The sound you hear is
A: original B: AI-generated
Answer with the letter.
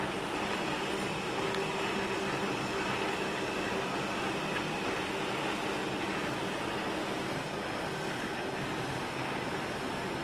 A